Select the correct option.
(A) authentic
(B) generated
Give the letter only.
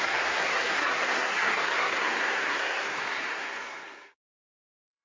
B